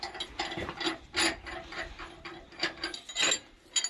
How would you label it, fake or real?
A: real